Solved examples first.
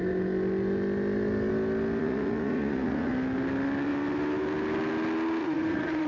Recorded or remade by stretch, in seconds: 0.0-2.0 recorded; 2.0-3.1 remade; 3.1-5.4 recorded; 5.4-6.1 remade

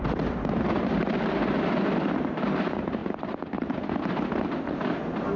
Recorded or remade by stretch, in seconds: 0.0-3.0 remade; 3.0-4.1 recorded; 4.1-5.4 remade

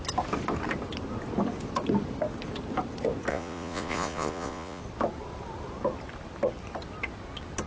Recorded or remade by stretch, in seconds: 0.0-3.3 recorded; 3.3-4.8 remade; 4.8-7.7 recorded

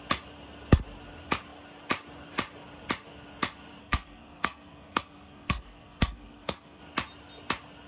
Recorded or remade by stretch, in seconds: 0.0-3.8 recorded; 3.8-6.8 remade; 6.8-7.9 recorded

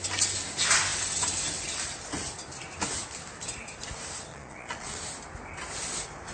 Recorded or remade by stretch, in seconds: 0.0-4.3 recorded; 4.3-5.0 remade; 5.0-6.3 recorded